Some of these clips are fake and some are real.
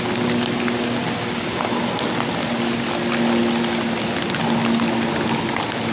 real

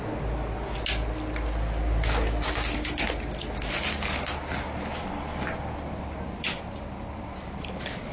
real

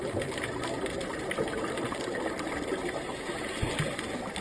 real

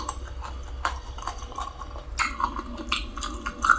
real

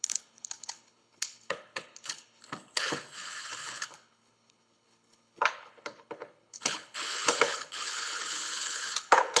fake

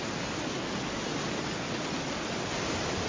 real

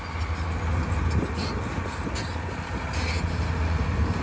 real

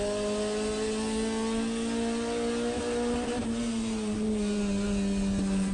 real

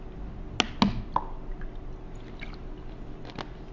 real